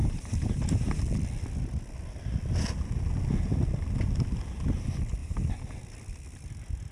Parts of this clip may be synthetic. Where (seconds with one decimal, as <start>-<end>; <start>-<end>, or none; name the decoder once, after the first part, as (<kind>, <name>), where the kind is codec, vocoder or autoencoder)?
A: 0.0-1.0 (vocoder, BigVGAN v2); 5.2-5.8